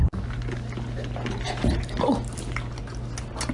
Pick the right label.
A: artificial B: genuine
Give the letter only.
B